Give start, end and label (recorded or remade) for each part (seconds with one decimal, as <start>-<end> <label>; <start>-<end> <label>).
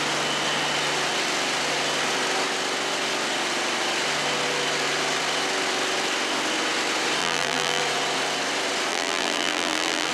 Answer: 0.0-7.2 recorded; 7.2-7.8 remade; 7.8-8.9 recorded; 8.9-10.1 remade